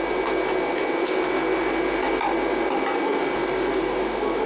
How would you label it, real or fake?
real